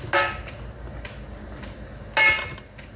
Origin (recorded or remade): recorded